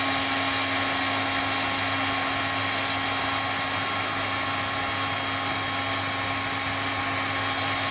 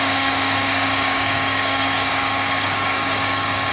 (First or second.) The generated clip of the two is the second